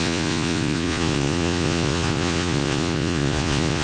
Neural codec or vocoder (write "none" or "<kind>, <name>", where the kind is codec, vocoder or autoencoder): vocoder, Vocos